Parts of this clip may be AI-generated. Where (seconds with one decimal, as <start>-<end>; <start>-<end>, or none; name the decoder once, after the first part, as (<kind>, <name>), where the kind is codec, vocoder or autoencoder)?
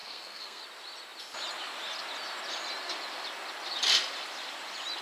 0.0-0.6 (codec, SNAC)